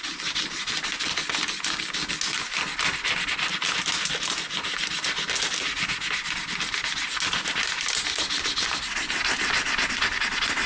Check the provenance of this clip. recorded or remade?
recorded